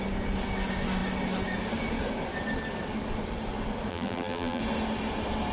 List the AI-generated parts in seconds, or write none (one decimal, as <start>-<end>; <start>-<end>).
3.9-4.6